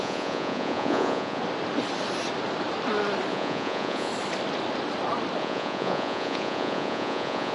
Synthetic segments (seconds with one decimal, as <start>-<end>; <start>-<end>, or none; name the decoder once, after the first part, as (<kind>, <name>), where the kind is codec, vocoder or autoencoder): 0.0-1.4 (vocoder, Vocos); 3.3-4.1; 5.4-7.5